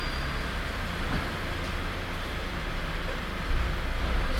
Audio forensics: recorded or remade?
recorded